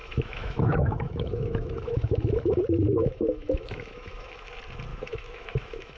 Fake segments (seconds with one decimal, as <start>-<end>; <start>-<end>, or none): 0.0-2.6; 3.0-4.5; 4.9-6.0